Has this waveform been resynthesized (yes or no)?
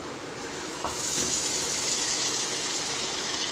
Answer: yes